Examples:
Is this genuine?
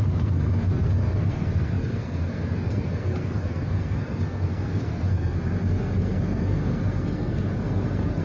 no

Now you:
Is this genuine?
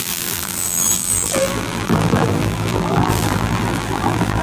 no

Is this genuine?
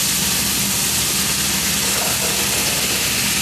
yes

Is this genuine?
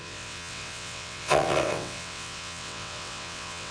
no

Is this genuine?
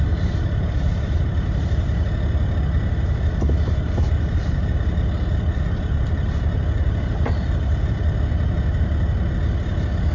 yes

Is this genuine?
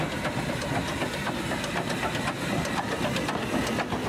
yes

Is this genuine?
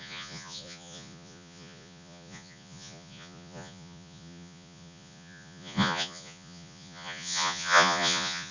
no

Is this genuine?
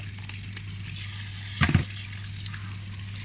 yes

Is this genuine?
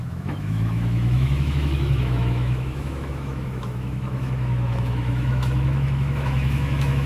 no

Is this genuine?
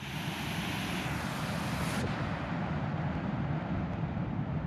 yes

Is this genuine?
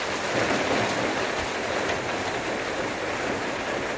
yes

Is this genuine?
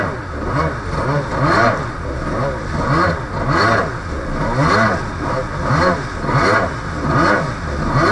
yes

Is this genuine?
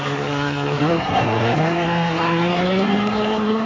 no